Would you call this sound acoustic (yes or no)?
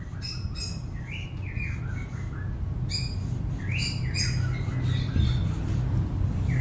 yes